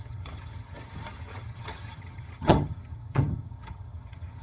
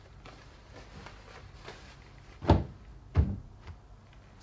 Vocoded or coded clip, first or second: first